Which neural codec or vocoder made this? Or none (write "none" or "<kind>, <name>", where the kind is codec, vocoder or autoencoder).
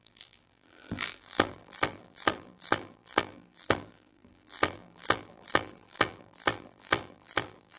vocoder, BigVGAN v2